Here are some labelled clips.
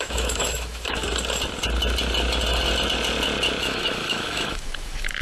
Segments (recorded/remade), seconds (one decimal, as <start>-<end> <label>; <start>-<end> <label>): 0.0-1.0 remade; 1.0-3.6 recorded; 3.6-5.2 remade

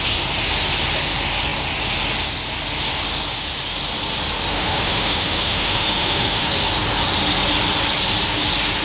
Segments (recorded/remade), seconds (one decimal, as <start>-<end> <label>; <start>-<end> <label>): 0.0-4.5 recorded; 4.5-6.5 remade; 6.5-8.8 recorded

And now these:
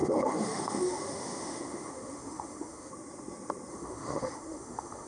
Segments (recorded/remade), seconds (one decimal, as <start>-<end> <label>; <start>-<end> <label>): 0.0-2.9 remade; 2.9-3.7 recorded; 3.7-5.1 remade